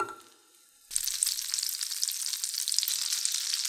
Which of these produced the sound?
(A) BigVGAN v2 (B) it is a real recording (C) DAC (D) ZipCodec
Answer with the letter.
A